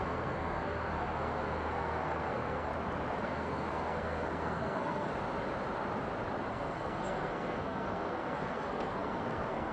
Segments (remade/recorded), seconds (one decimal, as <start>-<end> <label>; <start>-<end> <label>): 0.0-2.7 remade; 2.7-3.2 recorded; 3.2-5.1 remade; 5.1-6.5 recorded; 6.5-9.7 remade